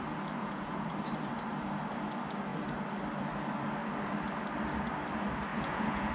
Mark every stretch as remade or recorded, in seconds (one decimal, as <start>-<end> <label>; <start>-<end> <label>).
0.0-0.4 recorded; 0.4-0.9 remade; 0.9-5.5 recorded; 5.5-6.1 remade